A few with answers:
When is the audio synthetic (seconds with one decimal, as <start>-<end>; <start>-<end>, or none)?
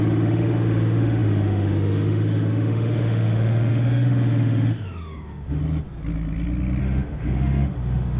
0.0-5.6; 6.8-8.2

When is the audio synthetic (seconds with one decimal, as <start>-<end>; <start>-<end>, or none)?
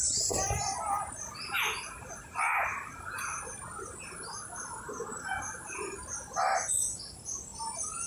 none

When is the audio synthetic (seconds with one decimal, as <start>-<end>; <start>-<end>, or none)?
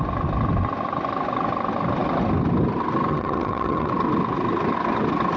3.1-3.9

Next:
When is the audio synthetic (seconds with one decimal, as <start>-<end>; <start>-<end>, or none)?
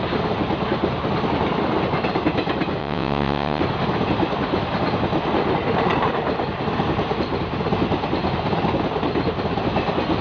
2.8-3.6